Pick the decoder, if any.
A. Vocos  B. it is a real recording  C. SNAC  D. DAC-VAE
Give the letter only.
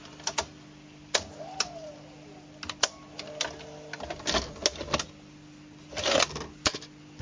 B